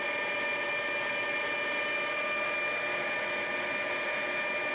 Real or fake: real